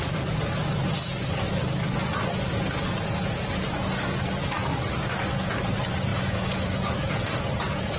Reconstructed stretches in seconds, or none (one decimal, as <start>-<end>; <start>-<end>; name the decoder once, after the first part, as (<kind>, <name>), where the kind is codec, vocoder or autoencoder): 6.1-7.3 (vocoder, Vocos)